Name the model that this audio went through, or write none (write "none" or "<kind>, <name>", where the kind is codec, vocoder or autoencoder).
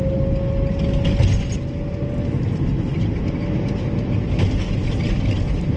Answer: none